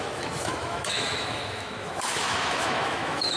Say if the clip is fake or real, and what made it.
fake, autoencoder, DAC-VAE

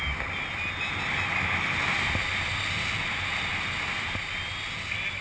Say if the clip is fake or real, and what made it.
real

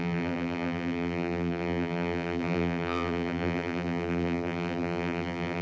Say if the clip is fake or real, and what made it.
fake, vocoder, BigVGAN v2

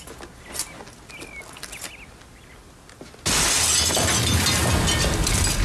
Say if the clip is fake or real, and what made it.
real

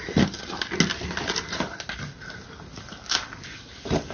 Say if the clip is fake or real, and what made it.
real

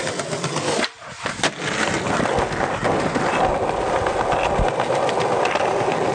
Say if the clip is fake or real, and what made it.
real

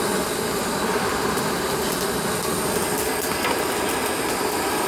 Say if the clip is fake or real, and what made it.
real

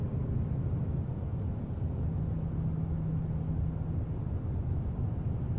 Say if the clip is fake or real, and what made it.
real